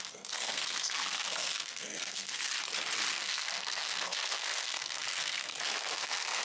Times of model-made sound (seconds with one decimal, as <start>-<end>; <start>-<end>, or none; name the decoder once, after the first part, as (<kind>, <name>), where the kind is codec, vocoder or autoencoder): 0.0-2.5 (codec, SNAC); 3.1-6.4